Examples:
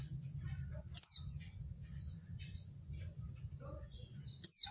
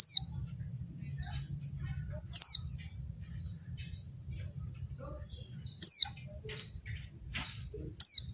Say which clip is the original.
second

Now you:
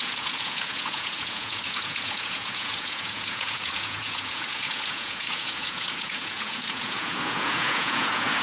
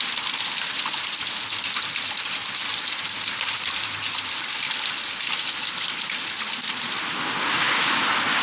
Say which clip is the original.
second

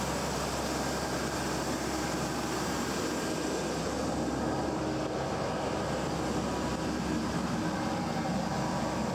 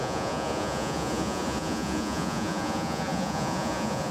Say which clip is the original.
first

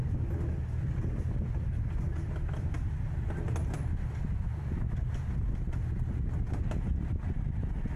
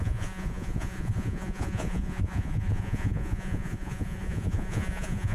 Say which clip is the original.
first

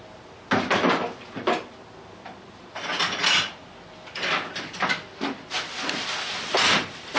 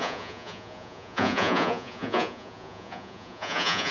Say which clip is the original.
first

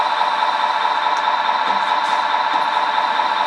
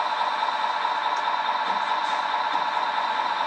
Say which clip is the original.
first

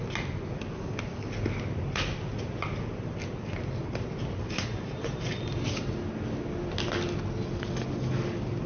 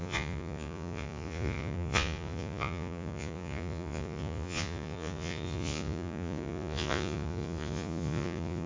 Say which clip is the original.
first